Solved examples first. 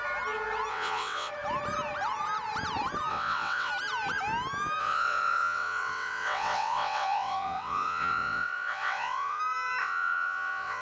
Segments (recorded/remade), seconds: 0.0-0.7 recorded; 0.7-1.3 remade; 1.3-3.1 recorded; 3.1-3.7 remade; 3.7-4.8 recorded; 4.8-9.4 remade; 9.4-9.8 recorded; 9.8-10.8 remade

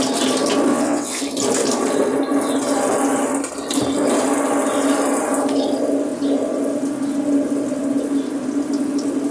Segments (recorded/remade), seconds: 0.0-0.7 recorded; 0.7-1.2 remade; 1.2-9.3 recorded

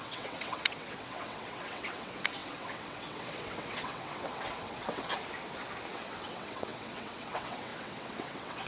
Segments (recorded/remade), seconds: 0.0-5.1 remade; 5.1-5.9 recorded; 5.9-8.7 remade

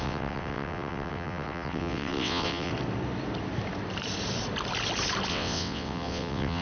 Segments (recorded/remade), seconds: 0.0-2.7 remade; 2.7-5.3 recorded; 5.3-6.6 remade

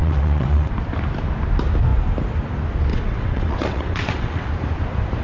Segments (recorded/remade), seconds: 0.0-0.7 remade; 0.7-2.9 recorded; 2.9-4.5 remade; 4.5-5.2 recorded

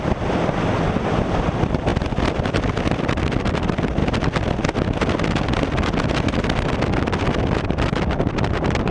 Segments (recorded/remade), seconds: 0.0-8.9 recorded

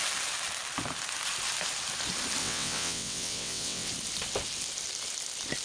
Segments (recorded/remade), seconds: 0.0-2.4 recorded; 2.4-3.9 remade; 3.9-5.6 recorded